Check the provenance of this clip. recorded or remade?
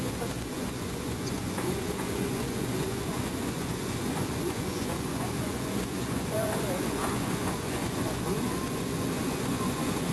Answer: remade